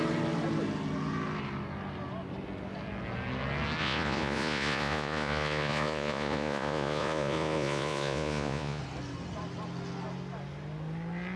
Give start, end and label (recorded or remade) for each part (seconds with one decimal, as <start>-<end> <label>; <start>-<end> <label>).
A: 0.0-3.8 recorded; 3.8-8.8 remade; 8.8-11.4 recorded